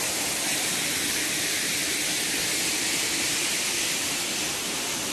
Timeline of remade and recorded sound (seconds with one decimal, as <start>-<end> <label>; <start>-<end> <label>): 0.0-5.1 recorded